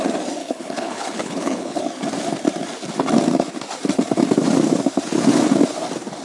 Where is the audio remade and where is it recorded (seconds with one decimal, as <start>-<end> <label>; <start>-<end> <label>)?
0.0-0.4 recorded; 0.4-1.8 remade; 1.8-6.2 recorded